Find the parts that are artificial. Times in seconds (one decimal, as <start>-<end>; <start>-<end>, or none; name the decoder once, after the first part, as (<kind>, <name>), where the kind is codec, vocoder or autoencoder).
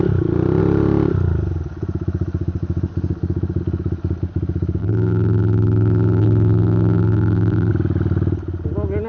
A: 4.8-7.7 (vocoder, BigVGAN v2)